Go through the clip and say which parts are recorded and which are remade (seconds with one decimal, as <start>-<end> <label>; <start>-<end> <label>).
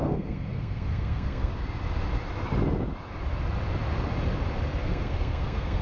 0.0-1.5 remade; 1.5-4.8 recorded; 4.8-5.8 remade